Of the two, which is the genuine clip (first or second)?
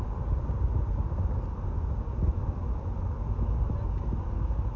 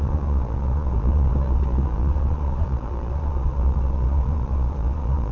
first